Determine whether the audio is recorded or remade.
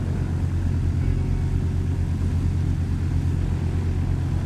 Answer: recorded